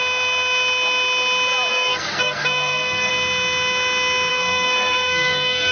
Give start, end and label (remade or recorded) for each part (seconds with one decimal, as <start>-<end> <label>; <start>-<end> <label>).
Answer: 0.0-1.7 recorded; 1.7-3.1 remade; 3.1-4.3 recorded; 4.3-5.7 remade